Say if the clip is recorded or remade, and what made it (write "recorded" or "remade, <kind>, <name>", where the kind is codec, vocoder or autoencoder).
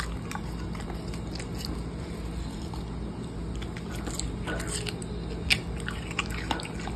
recorded